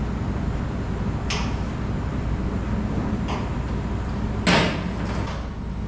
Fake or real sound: real